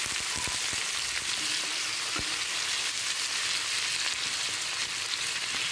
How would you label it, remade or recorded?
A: recorded